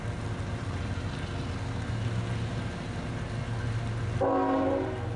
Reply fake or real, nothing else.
real